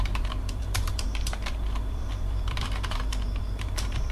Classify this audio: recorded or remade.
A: remade